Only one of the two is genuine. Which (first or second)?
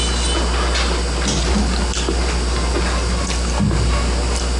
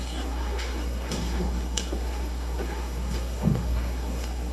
first